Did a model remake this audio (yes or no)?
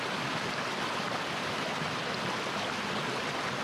no